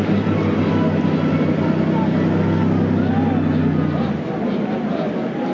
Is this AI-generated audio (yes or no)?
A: no